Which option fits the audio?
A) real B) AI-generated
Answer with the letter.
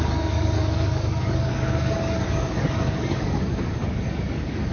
B